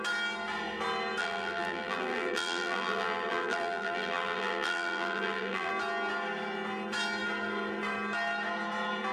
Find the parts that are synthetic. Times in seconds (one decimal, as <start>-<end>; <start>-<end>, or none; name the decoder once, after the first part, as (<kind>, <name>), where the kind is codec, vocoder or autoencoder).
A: 1.2-5.7 (vocoder, BigVGAN v2)